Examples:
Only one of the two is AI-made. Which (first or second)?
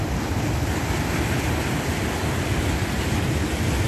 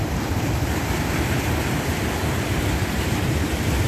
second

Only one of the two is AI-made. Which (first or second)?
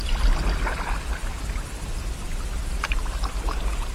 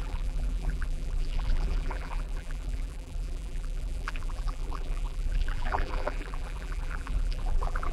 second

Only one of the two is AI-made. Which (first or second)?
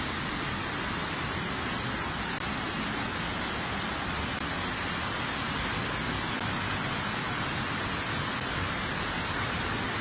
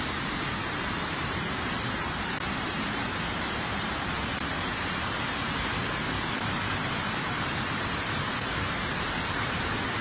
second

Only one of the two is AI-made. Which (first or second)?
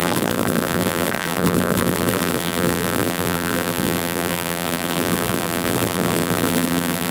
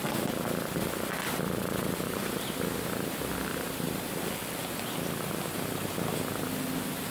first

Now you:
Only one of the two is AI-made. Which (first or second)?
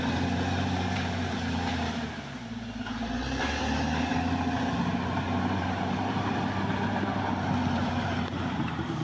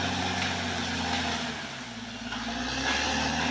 first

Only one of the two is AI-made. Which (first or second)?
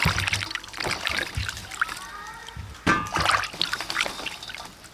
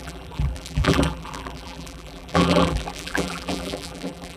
second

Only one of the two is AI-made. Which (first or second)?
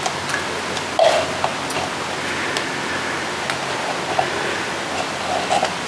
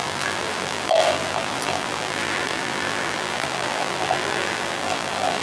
second